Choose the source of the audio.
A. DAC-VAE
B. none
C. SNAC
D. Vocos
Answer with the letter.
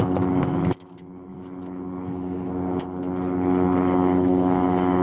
A